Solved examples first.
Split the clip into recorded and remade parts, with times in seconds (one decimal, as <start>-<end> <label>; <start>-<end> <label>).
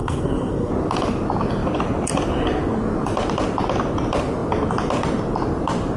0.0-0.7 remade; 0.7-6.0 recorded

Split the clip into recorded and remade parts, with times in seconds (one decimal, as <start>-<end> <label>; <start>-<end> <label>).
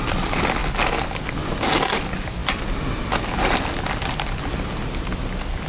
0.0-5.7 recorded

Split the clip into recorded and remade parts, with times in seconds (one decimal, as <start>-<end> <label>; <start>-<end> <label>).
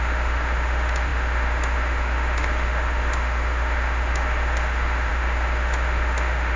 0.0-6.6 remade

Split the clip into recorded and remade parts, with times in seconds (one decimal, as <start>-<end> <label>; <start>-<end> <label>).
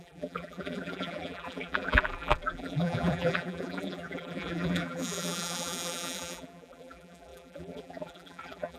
0.0-8.8 remade